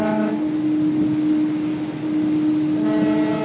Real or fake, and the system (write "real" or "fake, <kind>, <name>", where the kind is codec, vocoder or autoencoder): real